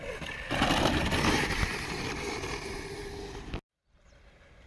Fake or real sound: real